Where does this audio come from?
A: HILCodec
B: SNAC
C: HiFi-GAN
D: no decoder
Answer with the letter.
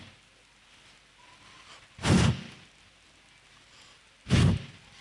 D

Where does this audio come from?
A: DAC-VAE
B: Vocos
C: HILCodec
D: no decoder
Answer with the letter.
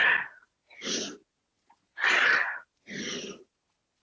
D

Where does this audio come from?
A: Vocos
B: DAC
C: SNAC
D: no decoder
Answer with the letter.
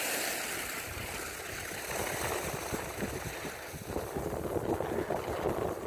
D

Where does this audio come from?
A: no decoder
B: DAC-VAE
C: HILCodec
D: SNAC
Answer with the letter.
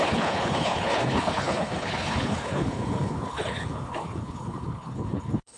C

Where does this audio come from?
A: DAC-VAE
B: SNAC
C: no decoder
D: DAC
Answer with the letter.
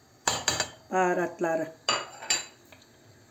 C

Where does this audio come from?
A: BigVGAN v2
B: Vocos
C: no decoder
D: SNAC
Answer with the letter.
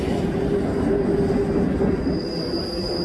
C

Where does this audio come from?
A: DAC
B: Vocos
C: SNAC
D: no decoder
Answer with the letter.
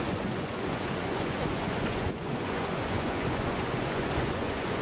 B